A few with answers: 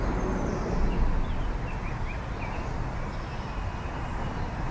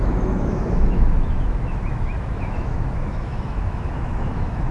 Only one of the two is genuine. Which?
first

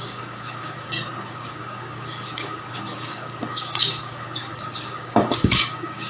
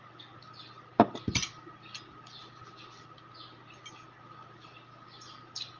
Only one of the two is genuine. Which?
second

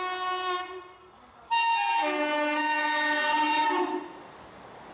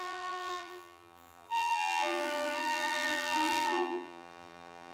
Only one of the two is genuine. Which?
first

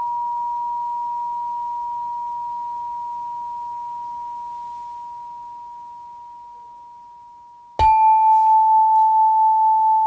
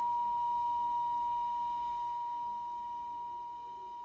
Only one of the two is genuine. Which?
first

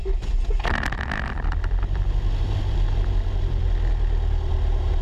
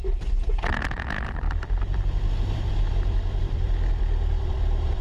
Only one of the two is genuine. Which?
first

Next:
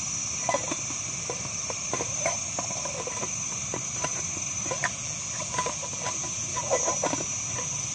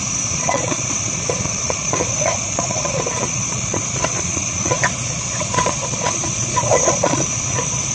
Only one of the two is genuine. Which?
first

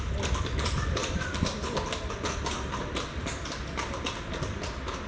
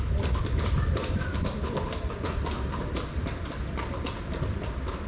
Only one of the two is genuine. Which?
first